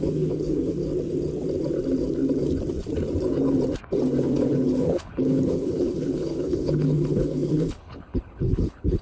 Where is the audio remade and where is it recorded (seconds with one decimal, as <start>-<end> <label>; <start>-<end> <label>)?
0.0-0.8 remade; 0.8-4.2 recorded; 4.2-9.0 remade